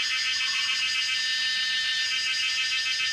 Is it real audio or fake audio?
real